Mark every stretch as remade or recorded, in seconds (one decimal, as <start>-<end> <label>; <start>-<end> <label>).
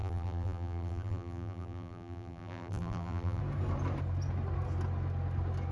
0.0-3.4 remade; 3.4-5.7 recorded